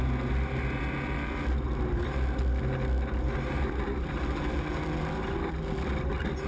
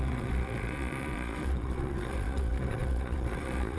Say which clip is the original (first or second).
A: first